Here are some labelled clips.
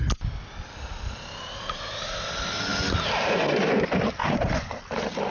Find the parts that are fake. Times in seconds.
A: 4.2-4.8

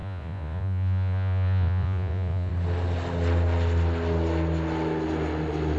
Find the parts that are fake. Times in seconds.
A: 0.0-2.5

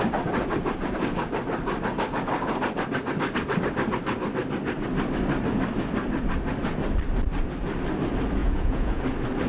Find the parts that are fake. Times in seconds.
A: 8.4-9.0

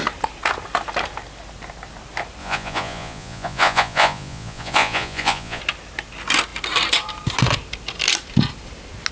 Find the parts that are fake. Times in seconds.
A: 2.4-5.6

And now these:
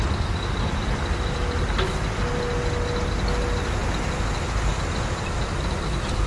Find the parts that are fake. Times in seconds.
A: none

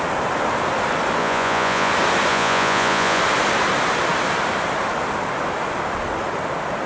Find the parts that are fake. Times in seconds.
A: 1.2-1.9; 2.3-3.2

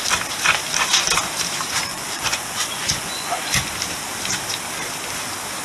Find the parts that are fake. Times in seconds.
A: 1.9-3.7